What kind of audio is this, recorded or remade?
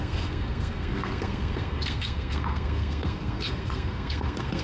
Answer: remade